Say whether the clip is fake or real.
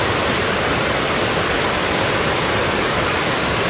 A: fake